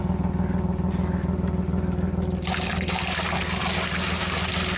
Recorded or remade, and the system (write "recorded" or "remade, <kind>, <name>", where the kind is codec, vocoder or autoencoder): recorded